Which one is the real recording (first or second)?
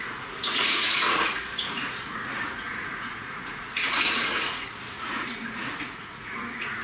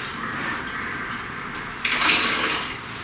second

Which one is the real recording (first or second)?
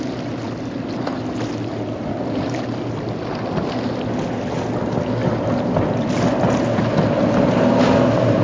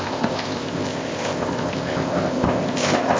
first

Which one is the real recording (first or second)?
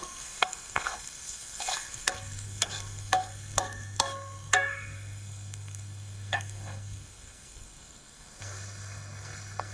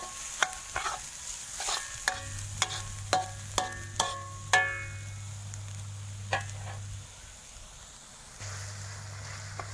second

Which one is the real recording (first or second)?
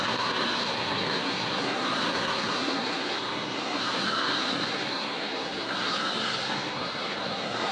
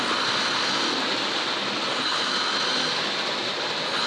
second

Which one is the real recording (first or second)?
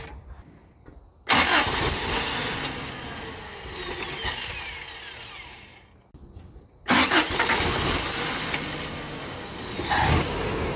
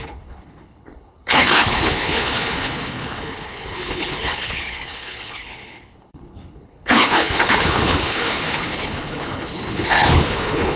first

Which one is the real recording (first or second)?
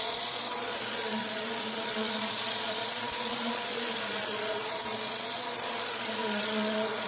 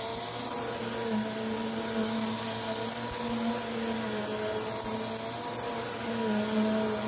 second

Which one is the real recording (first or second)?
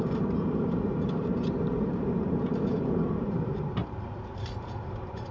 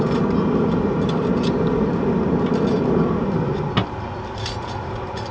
second